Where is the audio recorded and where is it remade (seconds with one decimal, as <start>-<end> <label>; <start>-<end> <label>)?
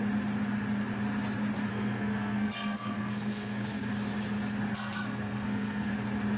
0.0-1.7 recorded; 1.7-3.8 remade; 3.8-4.7 recorded; 4.7-5.9 remade; 5.9-6.4 recorded